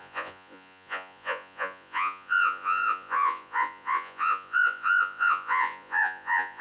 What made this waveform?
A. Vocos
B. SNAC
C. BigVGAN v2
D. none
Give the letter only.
A